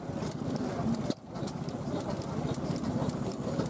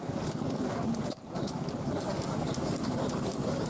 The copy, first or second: second